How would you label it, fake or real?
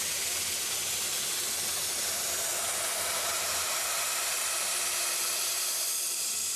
real